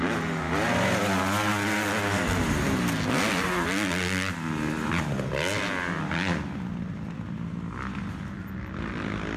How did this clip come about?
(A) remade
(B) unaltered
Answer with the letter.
B